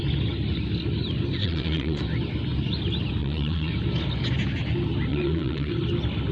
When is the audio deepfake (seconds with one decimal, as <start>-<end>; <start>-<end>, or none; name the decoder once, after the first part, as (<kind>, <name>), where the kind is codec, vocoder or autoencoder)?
1.4-2.0 (vocoder, Vocos); 3.2-3.7; 5.1-5.7